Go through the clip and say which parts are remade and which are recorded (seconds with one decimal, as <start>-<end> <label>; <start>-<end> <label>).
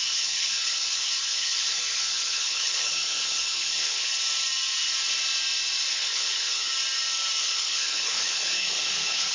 0.0-4.1 remade; 4.1-5.9 recorded; 5.9-6.7 remade; 6.7-7.4 recorded; 7.4-9.3 remade